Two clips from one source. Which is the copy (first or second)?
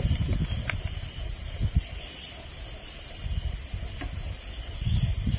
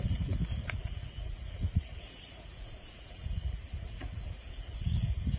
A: second